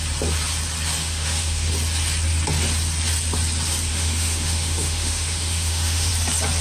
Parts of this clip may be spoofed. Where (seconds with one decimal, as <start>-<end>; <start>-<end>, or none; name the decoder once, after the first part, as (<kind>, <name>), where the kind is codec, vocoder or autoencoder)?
1.0-1.7 (autoencoder, DAC-VAE); 3.9-6.1